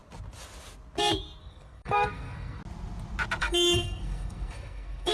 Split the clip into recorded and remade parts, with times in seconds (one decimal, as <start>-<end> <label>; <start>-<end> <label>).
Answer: 0.0-1.4 recorded; 1.4-2.6 remade; 2.6-3.4 recorded; 3.4-5.1 remade